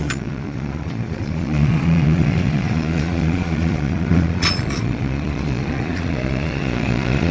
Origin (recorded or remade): remade